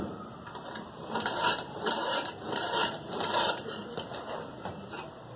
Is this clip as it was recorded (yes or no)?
no